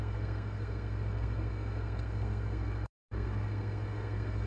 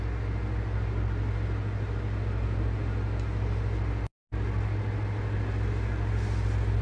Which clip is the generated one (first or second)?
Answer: first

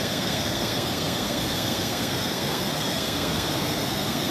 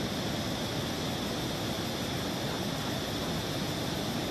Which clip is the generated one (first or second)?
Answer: first